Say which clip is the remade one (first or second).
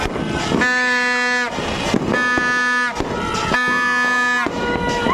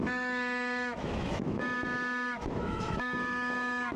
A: second